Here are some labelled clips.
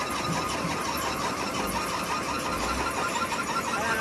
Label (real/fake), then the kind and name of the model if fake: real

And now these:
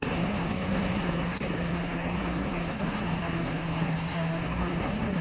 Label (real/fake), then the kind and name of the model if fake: fake, codec, SNAC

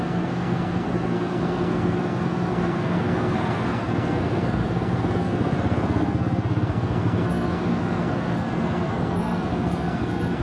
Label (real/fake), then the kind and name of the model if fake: fake, codec, SNAC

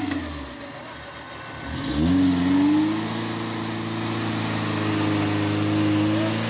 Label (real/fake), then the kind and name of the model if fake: real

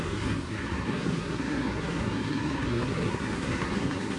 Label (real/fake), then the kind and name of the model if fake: fake, codec, SNAC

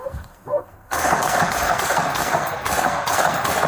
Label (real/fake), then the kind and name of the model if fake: fake, codec, SNAC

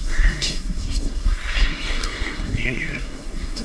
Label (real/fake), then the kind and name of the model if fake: fake, codec, SNAC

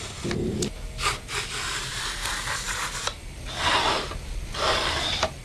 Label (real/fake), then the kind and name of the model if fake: real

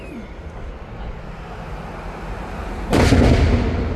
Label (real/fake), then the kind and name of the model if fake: real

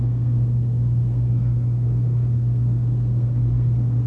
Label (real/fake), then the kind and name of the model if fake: fake, codec, SNAC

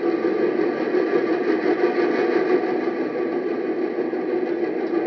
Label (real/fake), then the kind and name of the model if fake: real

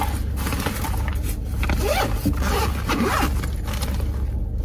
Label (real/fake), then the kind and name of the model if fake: real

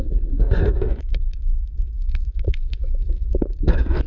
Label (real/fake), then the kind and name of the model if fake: fake, codec, SNAC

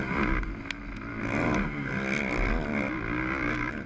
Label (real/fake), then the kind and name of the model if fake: real